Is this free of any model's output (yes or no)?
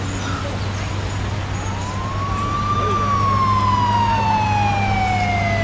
yes